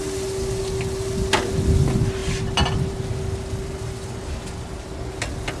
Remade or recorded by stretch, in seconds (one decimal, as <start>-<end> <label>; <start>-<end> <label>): 0.0-5.6 recorded